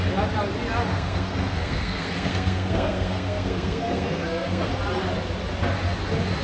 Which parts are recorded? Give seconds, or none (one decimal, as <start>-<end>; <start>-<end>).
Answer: 0.0-0.9; 4.7-6.4